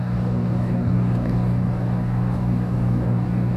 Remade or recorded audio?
remade